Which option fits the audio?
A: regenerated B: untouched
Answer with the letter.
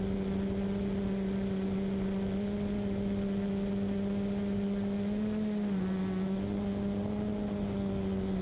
B